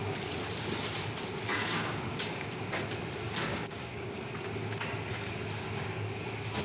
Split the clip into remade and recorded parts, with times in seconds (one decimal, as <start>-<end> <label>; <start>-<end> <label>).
0.0-1.5 recorded; 1.5-2.9 remade; 2.9-3.5 recorded; 3.5-4.2 remade; 4.2-6.6 recorded

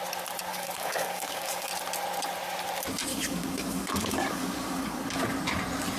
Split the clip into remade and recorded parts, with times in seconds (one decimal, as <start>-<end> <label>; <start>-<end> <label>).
0.0-0.5 recorded; 0.5-1.7 remade; 1.7-3.1 recorded; 3.1-5.2 remade; 5.2-6.0 recorded